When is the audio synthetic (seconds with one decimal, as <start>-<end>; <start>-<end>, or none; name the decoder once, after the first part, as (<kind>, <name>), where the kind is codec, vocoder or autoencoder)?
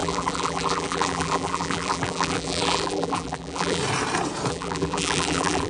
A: 0.0-3.8 (vocoder, BigVGAN v2); 4.5-5.7